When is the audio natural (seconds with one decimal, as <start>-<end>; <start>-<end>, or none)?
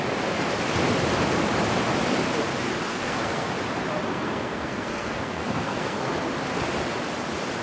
0.0-2.9; 3.5-4.1; 6.1-7.6